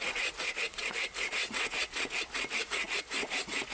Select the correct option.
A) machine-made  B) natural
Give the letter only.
A